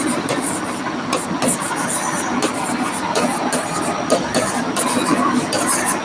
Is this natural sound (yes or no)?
yes